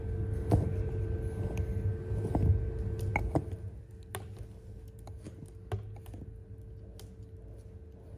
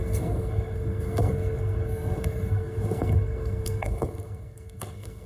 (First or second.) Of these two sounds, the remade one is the second